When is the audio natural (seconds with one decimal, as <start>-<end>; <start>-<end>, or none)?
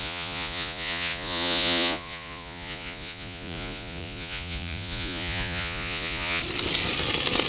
6.4-7.5